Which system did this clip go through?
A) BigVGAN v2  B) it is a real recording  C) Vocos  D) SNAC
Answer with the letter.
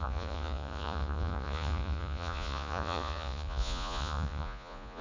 C